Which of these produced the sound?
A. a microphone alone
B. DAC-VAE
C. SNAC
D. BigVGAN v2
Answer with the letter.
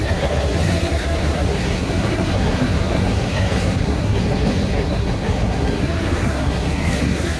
C